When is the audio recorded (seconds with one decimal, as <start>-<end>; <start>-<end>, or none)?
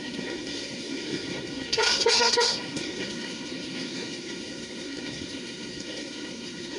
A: none